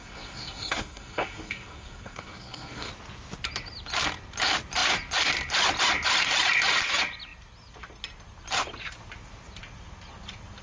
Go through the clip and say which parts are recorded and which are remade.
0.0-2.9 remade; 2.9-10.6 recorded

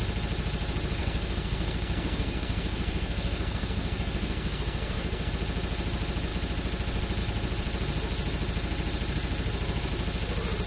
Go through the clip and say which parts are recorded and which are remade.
0.0-1.0 recorded; 1.0-5.3 remade; 5.3-10.7 recorded

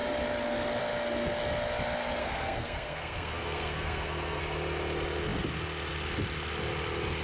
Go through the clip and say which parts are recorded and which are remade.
0.0-2.2 recorded; 2.2-4.4 remade; 4.4-7.2 recorded

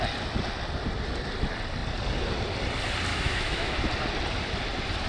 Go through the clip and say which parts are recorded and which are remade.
0.0-3.1 recorded; 3.1-3.9 remade; 3.9-5.1 recorded

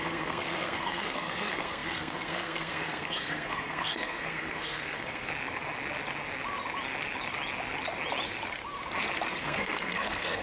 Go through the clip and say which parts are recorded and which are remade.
0.0-5.3 remade; 5.3-9.4 recorded; 9.4-10.4 remade

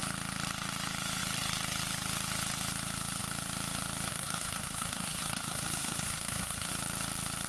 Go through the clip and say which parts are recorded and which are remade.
0.0-4.1 recorded; 4.1-6.7 remade; 6.7-7.5 recorded

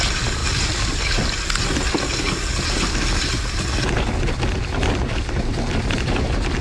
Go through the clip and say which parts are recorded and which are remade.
0.0-6.6 recorded